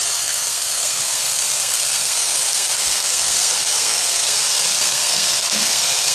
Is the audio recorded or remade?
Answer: remade